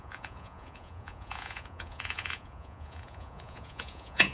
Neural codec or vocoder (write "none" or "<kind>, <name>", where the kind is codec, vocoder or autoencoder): vocoder, Vocos